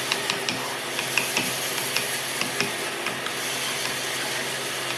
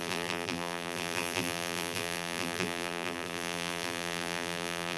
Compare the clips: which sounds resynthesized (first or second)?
second